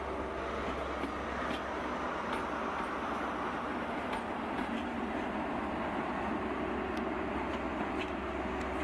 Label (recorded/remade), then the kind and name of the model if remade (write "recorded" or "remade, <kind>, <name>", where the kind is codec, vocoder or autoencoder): recorded